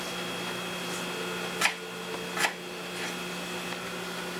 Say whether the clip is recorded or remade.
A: recorded